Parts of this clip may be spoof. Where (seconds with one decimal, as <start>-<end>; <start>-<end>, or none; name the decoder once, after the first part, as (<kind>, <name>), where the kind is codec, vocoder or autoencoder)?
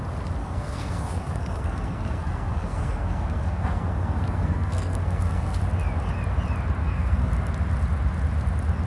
0.4-5.6 (codec, SNAC); 6.8-7.3